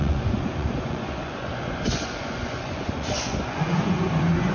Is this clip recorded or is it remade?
remade